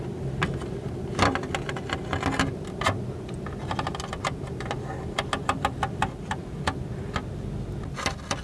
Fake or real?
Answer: real